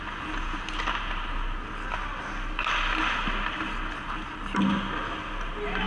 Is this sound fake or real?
real